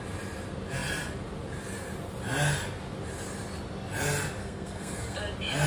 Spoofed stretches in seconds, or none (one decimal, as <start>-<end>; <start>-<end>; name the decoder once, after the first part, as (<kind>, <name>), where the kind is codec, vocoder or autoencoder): 4.4-5.2 (codec, SNAC)